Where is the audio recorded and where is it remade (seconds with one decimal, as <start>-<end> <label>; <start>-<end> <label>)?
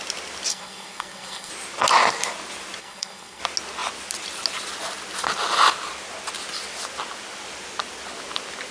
0.0-0.5 recorded; 0.5-1.5 remade; 1.5-2.8 recorded; 2.8-3.4 remade; 3.4-8.7 recorded